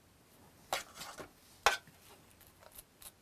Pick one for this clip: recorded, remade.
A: recorded